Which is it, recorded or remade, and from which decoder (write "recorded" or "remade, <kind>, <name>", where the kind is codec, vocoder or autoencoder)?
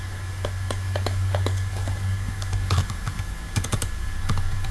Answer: remade, codec, DAC